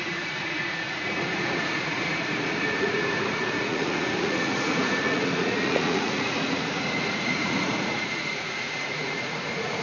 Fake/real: fake